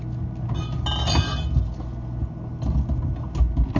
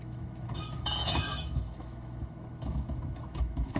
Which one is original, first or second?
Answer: first